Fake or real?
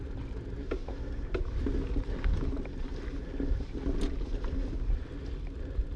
real